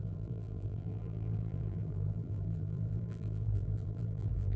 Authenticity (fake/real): fake